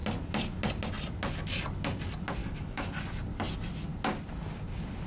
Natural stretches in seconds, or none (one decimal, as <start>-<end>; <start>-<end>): 0.0-2.4; 3.0-5.1